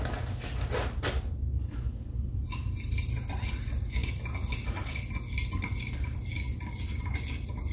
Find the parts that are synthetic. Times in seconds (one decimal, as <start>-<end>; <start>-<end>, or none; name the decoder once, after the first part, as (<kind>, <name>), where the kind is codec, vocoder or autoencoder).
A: none